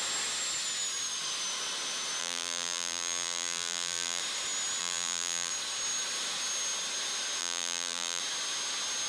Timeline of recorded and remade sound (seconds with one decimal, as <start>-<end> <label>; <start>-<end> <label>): 0.0-2.2 recorded; 2.2-4.2 remade; 4.2-4.8 recorded; 4.8-5.5 remade; 5.5-7.4 recorded; 7.4-8.2 remade; 8.2-9.1 recorded